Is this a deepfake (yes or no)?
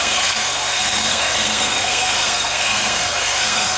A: yes